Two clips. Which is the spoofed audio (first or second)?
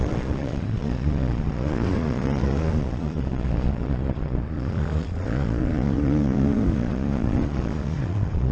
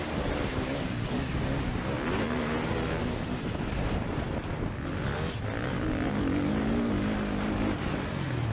first